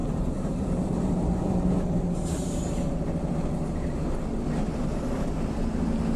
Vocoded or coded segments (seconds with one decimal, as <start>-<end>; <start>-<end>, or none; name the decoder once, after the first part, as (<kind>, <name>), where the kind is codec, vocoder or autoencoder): 0.0-2.6 (vocoder, BigVGAN v2)